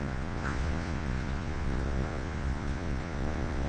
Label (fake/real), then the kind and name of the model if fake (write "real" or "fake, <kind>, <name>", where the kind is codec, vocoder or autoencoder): fake, vocoder, Vocos